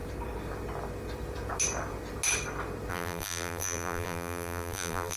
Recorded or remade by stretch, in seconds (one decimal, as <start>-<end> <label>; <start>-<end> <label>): 0.0-2.9 recorded; 2.9-5.2 remade